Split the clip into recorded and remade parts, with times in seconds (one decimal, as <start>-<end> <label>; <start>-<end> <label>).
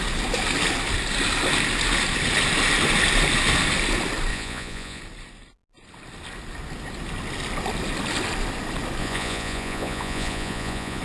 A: 0.0-4.3 recorded; 4.3-5.0 remade; 5.0-9.0 recorded; 9.0-11.0 remade